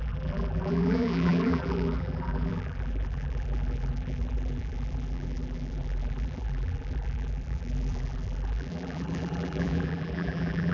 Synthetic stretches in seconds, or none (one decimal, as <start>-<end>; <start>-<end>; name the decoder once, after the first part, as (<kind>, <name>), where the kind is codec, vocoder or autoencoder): 0.0-10.7 (vocoder, BigVGAN v2)